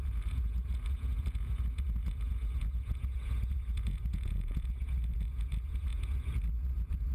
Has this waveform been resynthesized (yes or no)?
yes